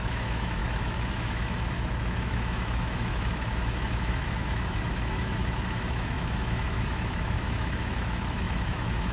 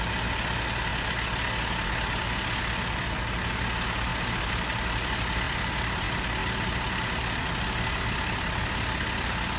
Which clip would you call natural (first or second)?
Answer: second